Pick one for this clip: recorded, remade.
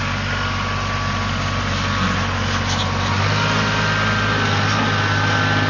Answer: recorded